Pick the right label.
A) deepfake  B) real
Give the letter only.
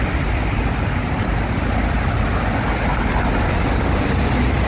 B